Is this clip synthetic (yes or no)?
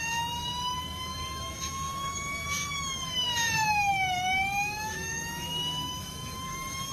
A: yes